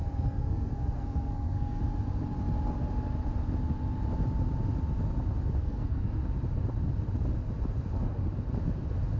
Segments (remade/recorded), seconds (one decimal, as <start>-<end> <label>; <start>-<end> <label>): 0.0-1.8 remade; 1.8-5.6 recorded; 5.6-6.2 remade; 6.2-9.2 recorded